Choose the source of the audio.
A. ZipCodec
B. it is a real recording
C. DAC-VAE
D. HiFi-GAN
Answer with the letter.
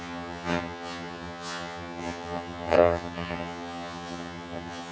D